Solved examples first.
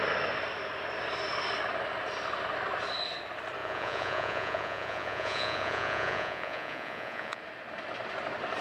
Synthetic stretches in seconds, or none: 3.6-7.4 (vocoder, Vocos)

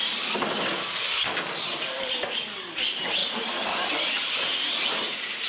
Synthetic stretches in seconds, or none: none